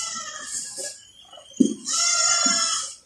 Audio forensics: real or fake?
real